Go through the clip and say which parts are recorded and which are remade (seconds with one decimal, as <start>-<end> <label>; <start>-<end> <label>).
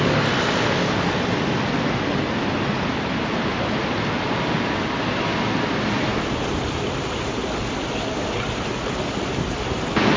0.0-10.2 recorded